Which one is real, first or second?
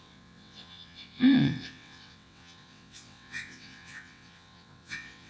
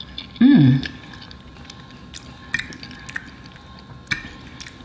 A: second